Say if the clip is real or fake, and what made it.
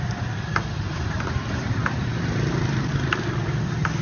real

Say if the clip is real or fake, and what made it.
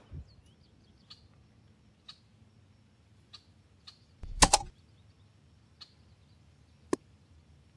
real